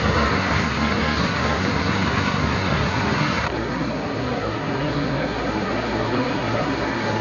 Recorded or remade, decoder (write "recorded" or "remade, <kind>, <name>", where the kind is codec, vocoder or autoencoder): remade, codec, SNAC